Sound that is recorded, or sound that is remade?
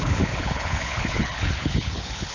remade